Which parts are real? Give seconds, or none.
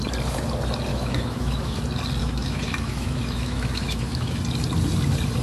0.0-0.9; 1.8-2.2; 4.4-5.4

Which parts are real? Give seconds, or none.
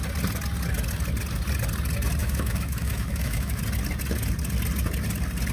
0.0-2.2; 3.6-5.5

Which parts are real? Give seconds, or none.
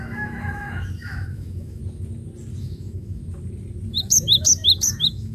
1.8-2.6; 3.2-3.9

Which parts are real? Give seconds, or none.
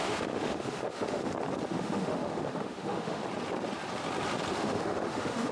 1.2-1.7; 3.2-4.5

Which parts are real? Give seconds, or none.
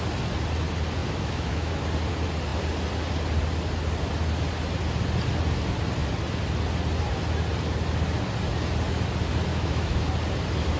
0.0-1.0; 1.8-9.5; 10.0-10.8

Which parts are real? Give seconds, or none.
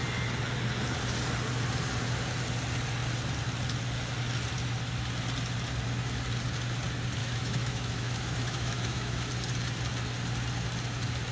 0.0-7.2; 9.3-11.3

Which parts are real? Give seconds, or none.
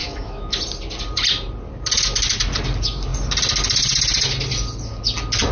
0.6-5.5